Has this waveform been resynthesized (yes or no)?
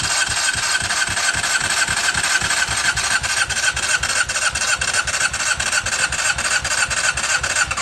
yes